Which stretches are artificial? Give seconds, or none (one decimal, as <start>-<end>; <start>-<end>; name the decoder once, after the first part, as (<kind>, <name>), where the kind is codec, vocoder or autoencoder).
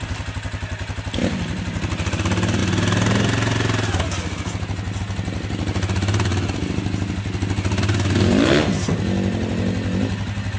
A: none